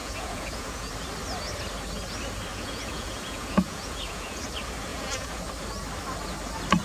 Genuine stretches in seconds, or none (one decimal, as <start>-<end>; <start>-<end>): 0.9-2.5; 4.5-4.9; 5.5-6.8